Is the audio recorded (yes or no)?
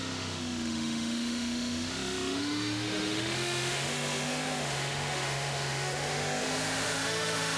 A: no